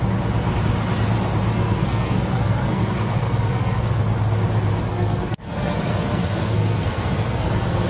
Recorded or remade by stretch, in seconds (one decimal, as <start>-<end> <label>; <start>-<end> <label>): 0.0-1.5 recorded; 1.5-4.0 remade; 4.0-4.9 recorded; 4.9-7.9 remade